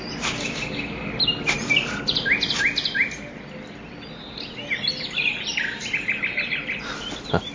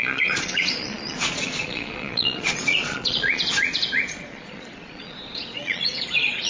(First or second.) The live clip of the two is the first